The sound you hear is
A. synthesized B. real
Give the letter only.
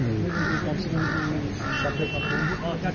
B